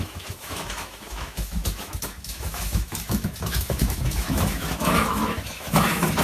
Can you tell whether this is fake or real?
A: fake